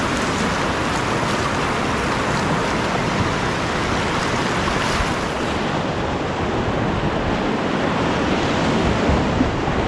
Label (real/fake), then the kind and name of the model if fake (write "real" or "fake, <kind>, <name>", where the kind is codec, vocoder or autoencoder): real